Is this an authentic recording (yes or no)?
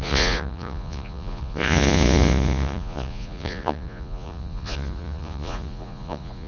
no